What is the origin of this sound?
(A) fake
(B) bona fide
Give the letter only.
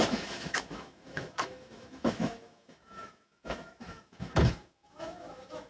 A